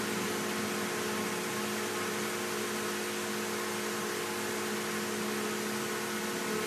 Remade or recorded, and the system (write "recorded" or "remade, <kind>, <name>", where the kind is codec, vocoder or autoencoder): recorded